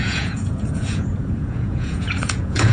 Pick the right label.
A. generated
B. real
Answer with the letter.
A